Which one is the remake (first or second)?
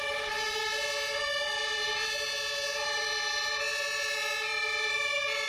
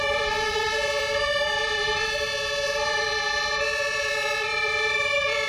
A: second